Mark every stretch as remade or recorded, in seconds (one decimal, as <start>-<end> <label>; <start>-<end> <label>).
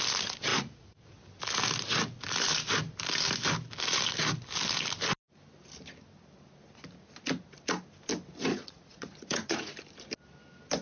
0.0-0.5 recorded; 0.5-1.1 remade; 1.1-8.5 recorded; 8.5-9.7 remade; 9.7-10.8 recorded